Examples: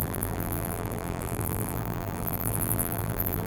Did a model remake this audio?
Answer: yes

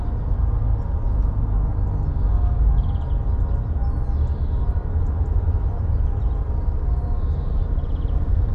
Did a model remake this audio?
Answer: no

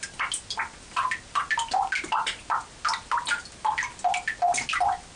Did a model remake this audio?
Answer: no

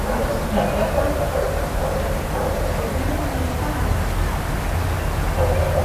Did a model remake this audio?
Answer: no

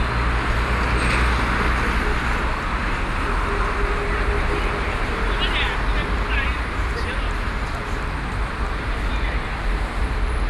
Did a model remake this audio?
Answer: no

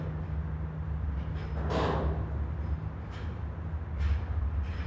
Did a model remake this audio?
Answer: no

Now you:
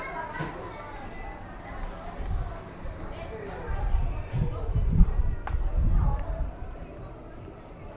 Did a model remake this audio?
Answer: no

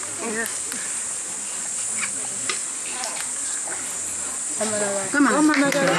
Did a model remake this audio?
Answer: no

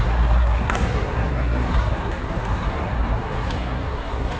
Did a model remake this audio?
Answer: yes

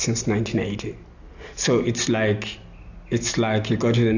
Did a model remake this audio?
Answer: no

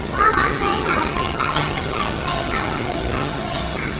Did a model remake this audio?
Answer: yes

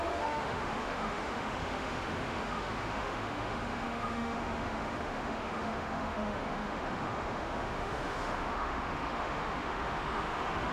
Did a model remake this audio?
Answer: yes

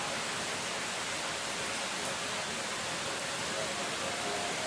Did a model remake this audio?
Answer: no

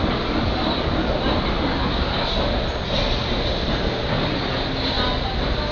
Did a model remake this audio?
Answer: no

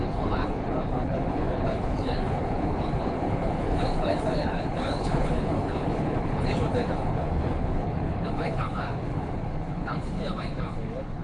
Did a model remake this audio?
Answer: yes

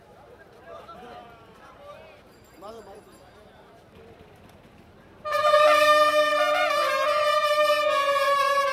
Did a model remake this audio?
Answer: yes